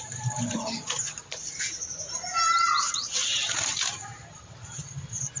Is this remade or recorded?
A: remade